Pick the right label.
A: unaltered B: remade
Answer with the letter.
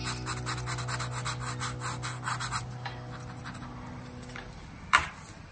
A